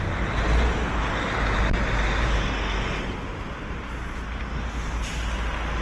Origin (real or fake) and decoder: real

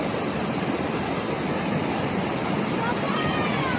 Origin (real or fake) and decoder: real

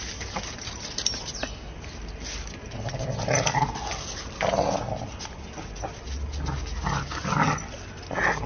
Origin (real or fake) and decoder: real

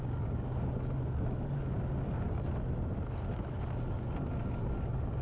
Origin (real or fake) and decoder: real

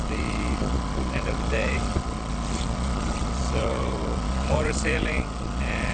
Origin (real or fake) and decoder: fake, vocoder, Vocos